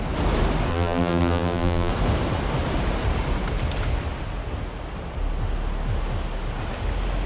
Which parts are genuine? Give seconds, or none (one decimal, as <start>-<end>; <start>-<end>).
0.0-0.7; 1.9-7.3